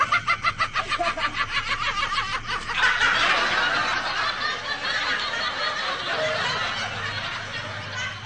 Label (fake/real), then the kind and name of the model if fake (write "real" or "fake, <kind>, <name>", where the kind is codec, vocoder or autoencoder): real